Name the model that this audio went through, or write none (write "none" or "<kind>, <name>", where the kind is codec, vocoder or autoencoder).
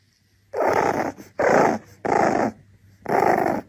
none